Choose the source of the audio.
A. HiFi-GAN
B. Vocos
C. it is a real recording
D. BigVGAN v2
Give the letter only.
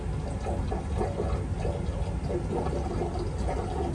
C